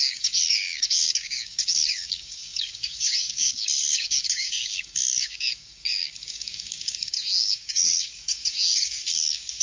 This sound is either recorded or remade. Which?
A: remade